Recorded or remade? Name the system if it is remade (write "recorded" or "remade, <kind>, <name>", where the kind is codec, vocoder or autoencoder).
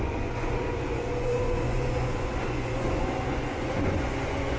remade, vocoder, Vocos